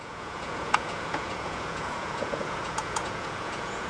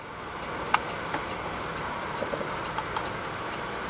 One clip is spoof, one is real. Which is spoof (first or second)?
first